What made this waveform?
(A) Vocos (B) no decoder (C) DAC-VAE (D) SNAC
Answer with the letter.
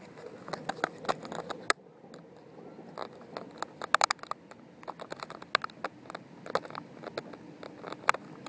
B